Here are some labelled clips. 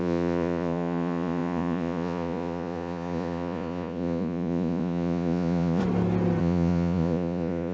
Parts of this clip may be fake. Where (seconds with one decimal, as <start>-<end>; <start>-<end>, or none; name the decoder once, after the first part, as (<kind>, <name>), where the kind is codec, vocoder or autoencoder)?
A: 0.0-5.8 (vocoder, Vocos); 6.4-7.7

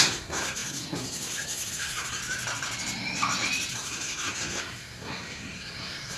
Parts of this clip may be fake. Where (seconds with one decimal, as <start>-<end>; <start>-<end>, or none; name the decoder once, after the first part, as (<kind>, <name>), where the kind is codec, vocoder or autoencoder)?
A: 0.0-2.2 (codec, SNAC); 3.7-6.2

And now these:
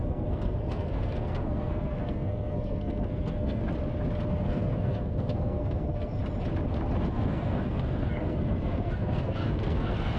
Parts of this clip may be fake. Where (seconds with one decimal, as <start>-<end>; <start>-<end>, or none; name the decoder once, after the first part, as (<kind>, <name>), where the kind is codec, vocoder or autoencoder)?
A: 0.0-3.6 (codec, SNAC); 4.3-6.2; 7.1-10.2

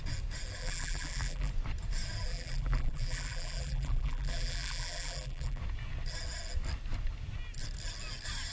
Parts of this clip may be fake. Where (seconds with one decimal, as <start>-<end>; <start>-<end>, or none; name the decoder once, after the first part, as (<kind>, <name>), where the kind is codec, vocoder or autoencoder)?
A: 0.6-1.5 (vocoder, BigVGAN v2); 2.3-5.6

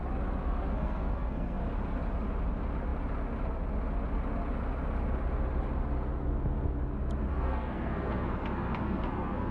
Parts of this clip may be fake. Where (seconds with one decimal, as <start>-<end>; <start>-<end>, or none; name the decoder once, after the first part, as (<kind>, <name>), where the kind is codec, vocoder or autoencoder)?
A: 0.4-1.6 (codec, SNAC); 7.3-9.5

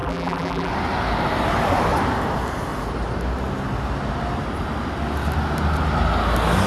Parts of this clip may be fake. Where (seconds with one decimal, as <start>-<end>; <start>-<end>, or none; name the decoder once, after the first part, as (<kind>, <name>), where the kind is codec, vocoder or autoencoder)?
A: 0.0-0.7 (vocoder, BigVGAN v2)

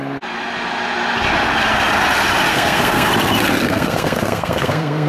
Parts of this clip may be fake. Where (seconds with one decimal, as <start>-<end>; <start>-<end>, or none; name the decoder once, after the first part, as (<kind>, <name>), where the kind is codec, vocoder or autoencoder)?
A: 2.5-3.1 (codec, SNAC); 3.6-5.1

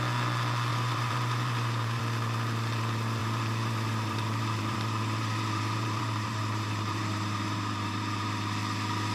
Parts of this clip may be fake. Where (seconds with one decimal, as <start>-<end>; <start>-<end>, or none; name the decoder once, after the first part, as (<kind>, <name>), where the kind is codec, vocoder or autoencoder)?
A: 0.7-2.0 (vocoder, BigVGAN v2); 3.2-8.3